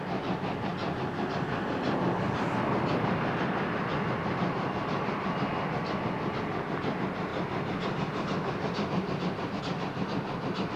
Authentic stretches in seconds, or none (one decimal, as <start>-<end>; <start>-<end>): 0.0-10.8